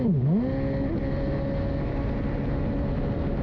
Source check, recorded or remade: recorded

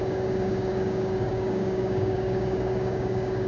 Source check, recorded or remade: remade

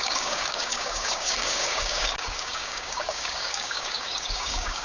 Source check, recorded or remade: remade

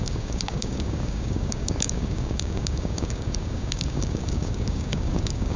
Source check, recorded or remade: remade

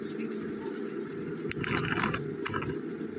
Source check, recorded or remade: recorded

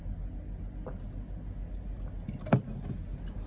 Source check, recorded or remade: recorded